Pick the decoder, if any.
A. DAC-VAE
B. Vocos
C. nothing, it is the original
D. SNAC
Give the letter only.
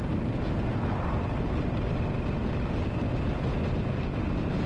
C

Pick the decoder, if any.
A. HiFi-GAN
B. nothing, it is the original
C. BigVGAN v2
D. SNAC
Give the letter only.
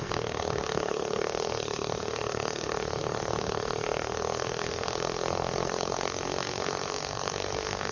D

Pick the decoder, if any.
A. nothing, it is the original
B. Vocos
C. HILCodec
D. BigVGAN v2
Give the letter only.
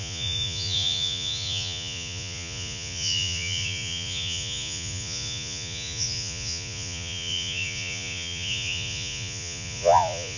B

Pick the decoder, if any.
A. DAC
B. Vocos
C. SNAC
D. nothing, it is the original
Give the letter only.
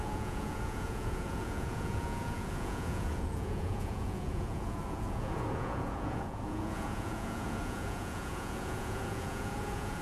B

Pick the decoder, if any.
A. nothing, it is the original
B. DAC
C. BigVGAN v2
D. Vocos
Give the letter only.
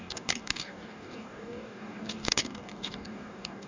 B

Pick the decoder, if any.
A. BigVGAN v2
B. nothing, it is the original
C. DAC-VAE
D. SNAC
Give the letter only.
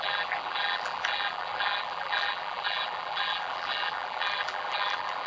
A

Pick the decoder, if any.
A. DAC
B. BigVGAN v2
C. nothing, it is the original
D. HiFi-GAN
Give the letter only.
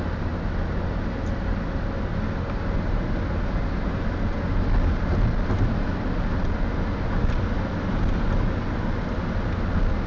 C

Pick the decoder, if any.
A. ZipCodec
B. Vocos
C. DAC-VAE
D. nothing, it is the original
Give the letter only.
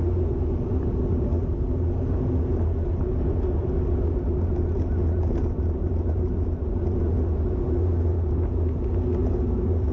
D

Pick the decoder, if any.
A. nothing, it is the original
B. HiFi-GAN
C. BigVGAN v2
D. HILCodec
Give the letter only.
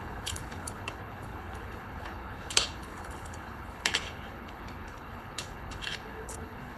D